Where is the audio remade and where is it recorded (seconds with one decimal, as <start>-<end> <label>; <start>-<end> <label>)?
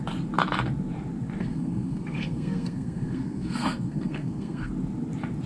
0.0-1.4 recorded; 1.4-4.7 remade; 4.7-5.5 recorded